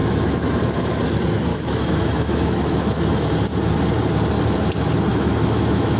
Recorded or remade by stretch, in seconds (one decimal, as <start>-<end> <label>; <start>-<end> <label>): 0.0-0.6 remade; 0.6-1.5 recorded; 1.5-3.3 remade; 3.3-5.1 recorded; 5.1-6.0 remade